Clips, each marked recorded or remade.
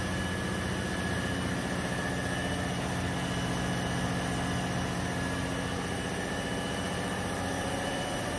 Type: recorded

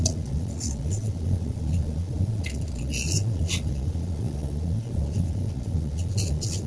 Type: remade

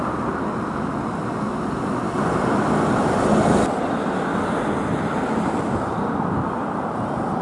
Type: recorded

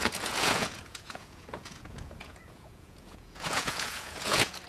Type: remade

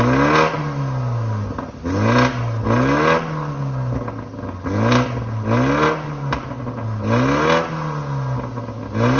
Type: recorded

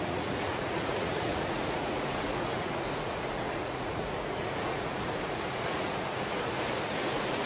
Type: remade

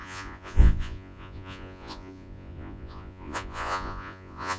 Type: remade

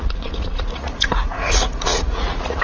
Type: remade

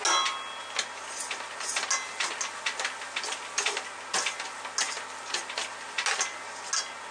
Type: recorded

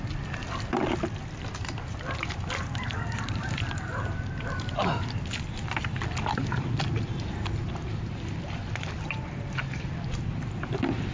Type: recorded